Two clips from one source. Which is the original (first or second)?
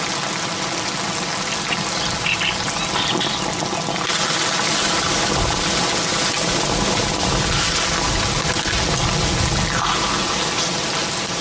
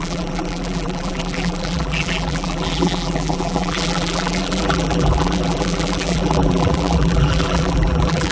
first